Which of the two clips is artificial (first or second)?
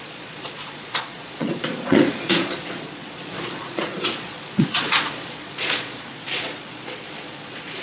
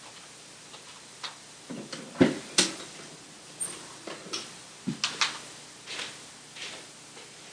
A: first